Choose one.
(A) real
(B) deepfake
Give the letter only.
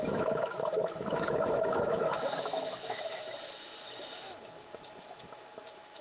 B